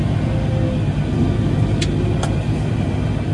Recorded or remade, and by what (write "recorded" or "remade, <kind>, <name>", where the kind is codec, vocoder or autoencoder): recorded